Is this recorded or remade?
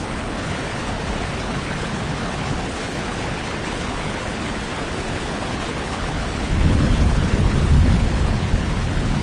remade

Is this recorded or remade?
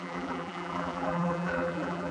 remade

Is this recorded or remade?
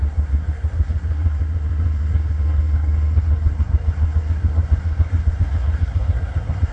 remade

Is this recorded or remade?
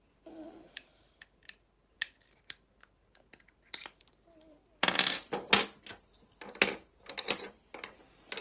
recorded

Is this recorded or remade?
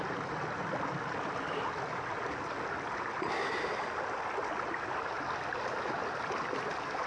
recorded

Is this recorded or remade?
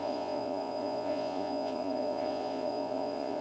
remade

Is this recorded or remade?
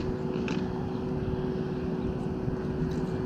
recorded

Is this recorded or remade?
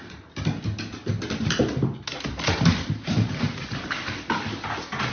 recorded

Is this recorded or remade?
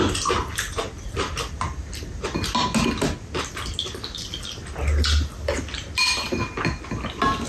recorded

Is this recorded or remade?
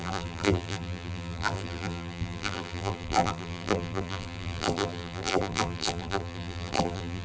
remade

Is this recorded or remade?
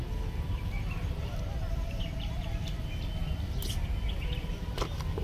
recorded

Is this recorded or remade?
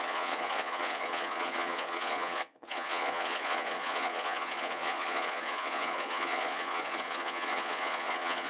remade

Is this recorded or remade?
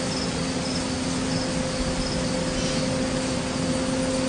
recorded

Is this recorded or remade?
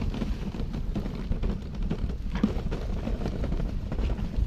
recorded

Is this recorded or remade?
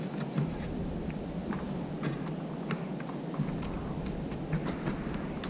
recorded